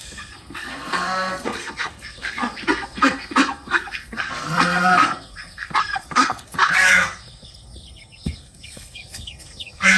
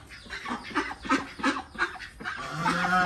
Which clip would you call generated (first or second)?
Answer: first